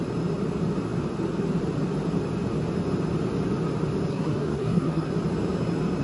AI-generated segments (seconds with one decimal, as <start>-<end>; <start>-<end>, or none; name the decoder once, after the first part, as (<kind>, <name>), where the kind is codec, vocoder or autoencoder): 4.1-5.1 (codec, SNAC)